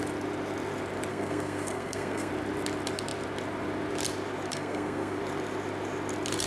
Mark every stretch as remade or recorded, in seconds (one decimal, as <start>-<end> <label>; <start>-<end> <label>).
0.0-1.1 recorded; 1.1-2.3 remade; 2.3-4.5 recorded; 4.5-5.2 remade; 5.2-6.5 recorded

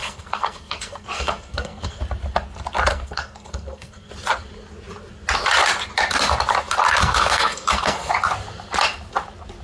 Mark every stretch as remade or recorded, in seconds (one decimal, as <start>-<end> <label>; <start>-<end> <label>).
0.0-2.0 remade; 2.0-2.9 recorded; 2.9-4.1 remade; 4.1-7.0 recorded; 7.0-8.1 remade; 8.1-9.6 recorded

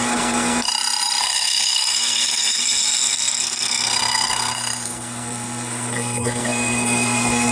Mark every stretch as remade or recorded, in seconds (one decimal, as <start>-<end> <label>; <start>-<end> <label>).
0.0-0.7 remade; 0.7-1.2 recorded; 1.2-7.5 remade

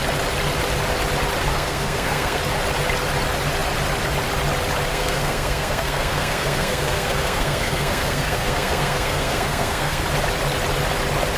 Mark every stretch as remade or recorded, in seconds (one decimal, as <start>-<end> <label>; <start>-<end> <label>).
0.0-1.5 recorded; 1.5-2.4 remade; 2.4-4.9 recorded; 4.9-10.0 remade; 10.0-11.4 recorded